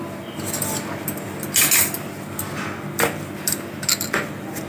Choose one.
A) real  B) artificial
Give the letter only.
A